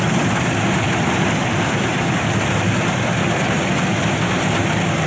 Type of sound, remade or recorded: recorded